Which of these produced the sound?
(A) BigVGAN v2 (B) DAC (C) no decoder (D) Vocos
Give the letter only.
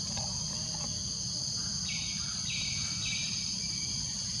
C